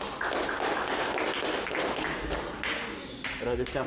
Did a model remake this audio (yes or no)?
no